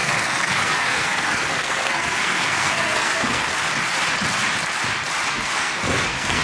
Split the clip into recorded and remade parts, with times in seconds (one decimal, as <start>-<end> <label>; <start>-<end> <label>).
0.0-3.5 remade; 3.5-5.3 recorded; 5.3-6.4 remade